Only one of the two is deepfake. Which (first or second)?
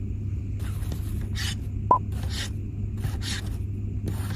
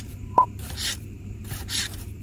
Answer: second